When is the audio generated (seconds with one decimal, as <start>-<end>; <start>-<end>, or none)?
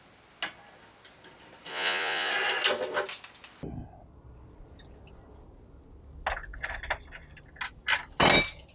1.7-2.3